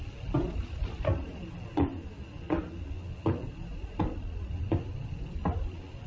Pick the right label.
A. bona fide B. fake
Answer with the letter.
A